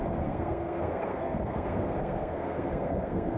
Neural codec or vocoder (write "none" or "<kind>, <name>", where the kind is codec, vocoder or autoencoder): codec, SNAC